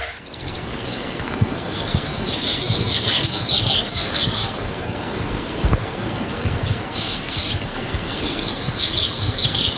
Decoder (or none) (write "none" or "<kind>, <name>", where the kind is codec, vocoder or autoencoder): codec, SNAC